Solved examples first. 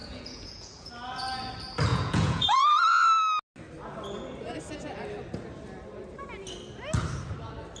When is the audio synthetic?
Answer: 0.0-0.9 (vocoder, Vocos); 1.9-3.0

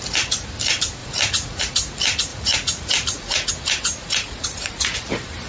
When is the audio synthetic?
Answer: 1.0-1.6 (vocoder, Vocos); 2.3-3.5; 4.0-5.1

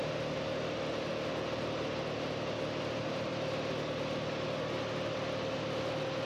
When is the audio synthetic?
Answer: none

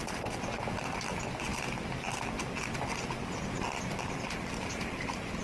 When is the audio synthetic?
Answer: none